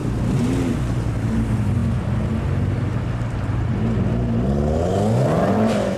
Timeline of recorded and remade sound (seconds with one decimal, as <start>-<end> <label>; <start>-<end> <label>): 0.0-6.0 recorded